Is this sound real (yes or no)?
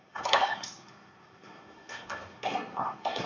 no